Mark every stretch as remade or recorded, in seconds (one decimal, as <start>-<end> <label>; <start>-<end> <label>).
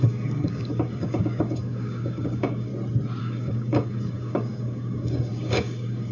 0.0-2.7 remade; 2.7-3.2 recorded; 3.2-6.1 remade